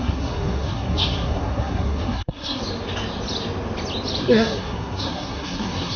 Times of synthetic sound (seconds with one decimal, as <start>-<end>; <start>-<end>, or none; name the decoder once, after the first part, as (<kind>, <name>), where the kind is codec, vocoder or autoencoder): 0.0-2.6 (codec, SNAC); 4.2-6.0

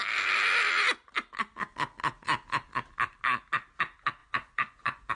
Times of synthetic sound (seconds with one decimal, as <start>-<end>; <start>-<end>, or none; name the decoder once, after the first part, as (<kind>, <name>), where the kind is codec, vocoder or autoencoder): 4.2-5.1 (vocoder, Vocos)

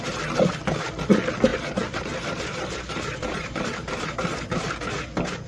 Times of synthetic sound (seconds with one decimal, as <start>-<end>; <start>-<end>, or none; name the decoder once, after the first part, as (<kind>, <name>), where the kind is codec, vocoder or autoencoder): 1.5-4.8 (vocoder, BigVGAN v2)

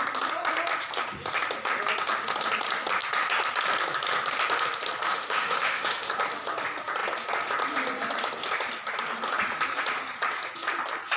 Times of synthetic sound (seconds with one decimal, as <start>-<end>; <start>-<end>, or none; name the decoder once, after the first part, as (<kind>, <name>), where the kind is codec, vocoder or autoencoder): 5.1-6.1 (autoencoder, DAC-VAE)

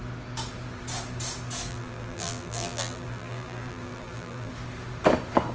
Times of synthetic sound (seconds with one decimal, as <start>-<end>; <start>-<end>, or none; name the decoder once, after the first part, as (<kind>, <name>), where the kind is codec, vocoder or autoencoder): 1.7-4.5 (vocoder, BigVGAN v2)

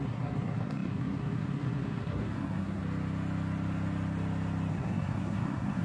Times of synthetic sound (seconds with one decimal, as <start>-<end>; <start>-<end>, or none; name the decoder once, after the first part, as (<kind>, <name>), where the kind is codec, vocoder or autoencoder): 0.0-2.8 (codec, SNAC); 4.7-5.8